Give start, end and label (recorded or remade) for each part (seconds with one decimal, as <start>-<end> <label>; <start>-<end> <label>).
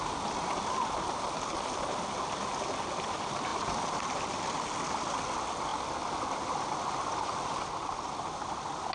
0.0-8.9 recorded